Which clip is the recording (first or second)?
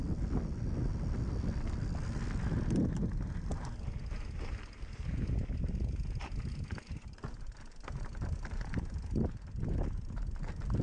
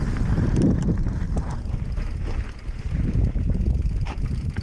first